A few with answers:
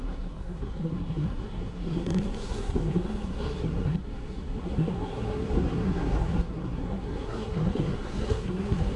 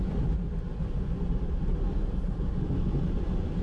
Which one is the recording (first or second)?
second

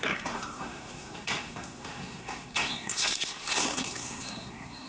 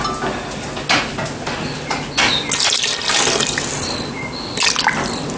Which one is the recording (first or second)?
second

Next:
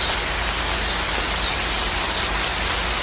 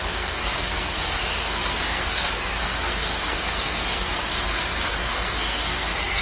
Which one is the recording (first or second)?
first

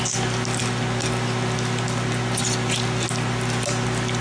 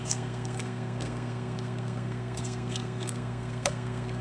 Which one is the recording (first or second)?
first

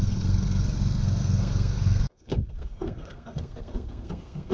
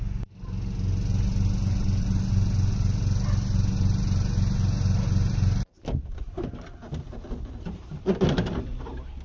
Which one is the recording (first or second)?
second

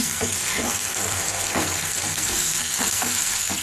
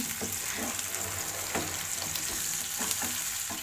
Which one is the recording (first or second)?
second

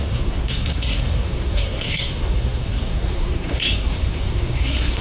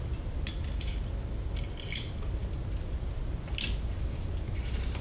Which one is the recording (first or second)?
second